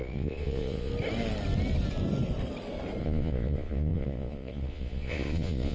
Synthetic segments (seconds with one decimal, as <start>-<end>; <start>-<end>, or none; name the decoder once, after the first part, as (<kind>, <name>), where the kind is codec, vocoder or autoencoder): 0.0-0.9 (vocoder, Vocos); 3.0-5.7

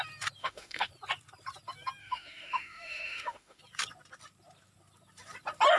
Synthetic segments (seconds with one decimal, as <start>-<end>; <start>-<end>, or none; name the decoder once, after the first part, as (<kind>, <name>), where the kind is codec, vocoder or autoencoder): 0.4-0.9 (autoencoder, DAC-VAE); 2.0-3.6

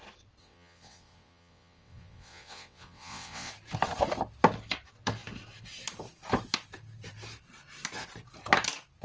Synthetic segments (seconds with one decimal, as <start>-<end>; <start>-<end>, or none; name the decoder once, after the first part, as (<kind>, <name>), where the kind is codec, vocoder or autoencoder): 0.4-3.5 (vocoder, WaveNeXt)

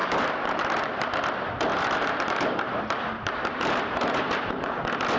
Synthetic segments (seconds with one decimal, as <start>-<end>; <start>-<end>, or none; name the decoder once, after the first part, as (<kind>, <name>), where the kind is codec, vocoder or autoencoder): 0.0-0.8 (vocoder, BigVGAN v2); 1.7-4.8

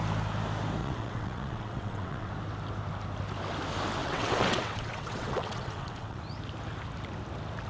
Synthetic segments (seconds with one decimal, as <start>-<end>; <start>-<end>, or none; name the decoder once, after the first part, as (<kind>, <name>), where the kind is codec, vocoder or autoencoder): 0.8-2.3 (vocoder, WaveNeXt); 4.0-6.2

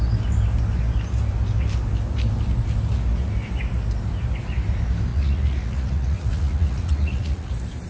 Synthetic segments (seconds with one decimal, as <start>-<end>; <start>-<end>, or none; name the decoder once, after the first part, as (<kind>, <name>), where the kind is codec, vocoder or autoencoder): 5.1-7.5 (vocoder, Vocos)

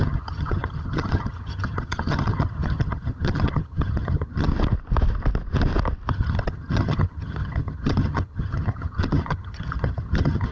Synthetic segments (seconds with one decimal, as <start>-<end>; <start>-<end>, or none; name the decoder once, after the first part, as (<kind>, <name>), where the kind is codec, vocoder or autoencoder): 0.0-4.5 (vocoder, HiFi-GAN); 6.1-10.5

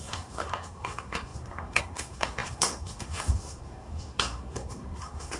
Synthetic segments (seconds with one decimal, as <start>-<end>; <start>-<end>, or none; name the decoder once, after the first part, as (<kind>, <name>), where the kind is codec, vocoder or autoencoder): 0.0-5.4 (codec, SNAC)